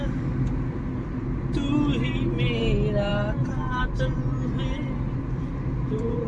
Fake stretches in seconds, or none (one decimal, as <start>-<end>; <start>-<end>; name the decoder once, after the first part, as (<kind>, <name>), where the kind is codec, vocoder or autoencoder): none